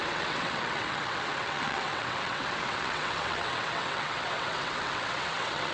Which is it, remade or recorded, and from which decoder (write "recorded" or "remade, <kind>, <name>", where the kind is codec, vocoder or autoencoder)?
remade, vocoder, WaveNeXt